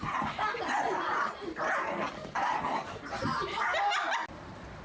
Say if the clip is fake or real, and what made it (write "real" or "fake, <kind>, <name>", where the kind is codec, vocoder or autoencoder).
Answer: real